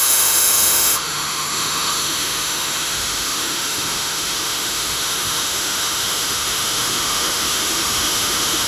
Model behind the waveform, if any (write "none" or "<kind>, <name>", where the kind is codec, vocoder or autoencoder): autoencoder, DAC-VAE